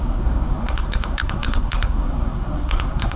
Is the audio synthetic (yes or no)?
yes